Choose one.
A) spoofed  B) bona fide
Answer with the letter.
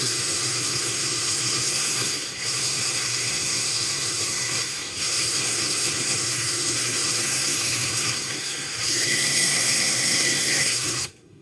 A